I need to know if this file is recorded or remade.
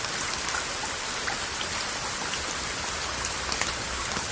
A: recorded